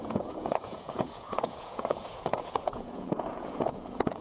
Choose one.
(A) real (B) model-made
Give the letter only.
B